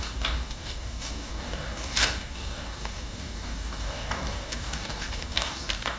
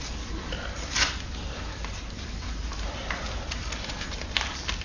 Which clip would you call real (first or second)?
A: second